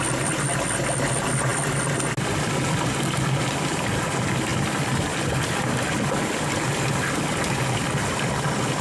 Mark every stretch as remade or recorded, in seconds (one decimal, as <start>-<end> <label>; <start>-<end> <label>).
0.0-8.8 recorded